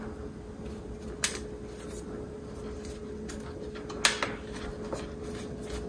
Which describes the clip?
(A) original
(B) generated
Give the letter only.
A